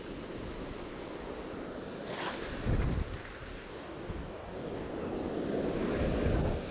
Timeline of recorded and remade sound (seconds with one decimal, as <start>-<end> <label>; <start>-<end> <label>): 0.0-3.5 recorded; 3.5-4.9 remade; 4.9-6.7 recorded